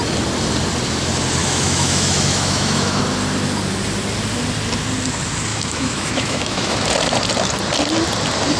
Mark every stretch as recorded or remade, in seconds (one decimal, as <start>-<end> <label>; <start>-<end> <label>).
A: 0.0-1.4 recorded; 1.4-3.0 remade; 3.0-5.5 recorded; 5.5-6.9 remade; 6.9-8.6 recorded